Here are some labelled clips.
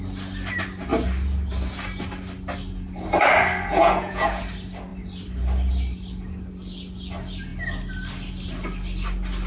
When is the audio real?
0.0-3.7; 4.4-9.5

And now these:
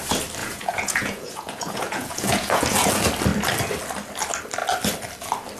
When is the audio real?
0.0-0.4; 2.9-5.6

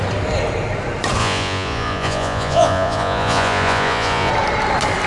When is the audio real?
0.0-1.2; 4.3-5.1